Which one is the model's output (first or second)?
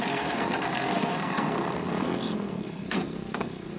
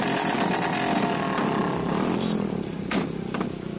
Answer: first